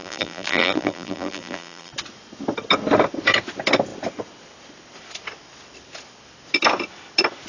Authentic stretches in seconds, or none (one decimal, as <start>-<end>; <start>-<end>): 1.9-7.5